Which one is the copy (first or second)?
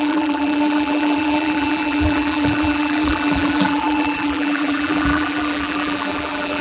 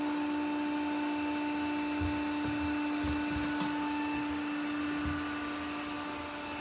first